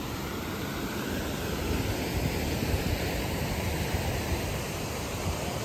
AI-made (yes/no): no